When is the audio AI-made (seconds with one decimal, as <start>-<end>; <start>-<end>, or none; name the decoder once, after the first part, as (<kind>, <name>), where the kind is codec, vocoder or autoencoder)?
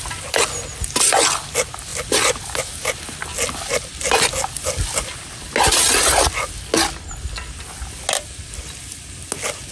1.9-2.6 (vocoder, BigVGAN v2)